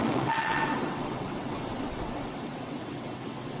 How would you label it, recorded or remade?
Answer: remade